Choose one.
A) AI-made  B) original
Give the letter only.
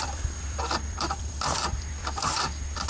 A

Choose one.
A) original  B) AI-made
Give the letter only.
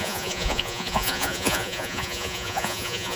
B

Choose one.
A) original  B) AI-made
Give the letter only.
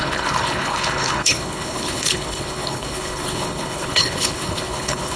B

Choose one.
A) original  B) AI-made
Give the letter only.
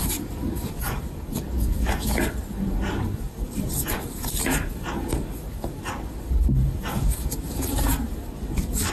B